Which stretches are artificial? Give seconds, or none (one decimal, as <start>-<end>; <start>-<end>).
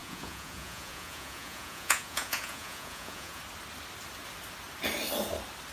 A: 0.0-3.4